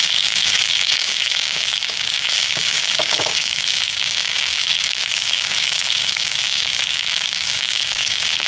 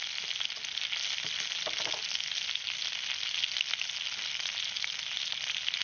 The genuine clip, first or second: second